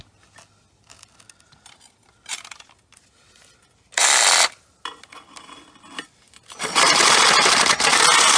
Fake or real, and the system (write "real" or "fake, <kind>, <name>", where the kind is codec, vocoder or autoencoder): real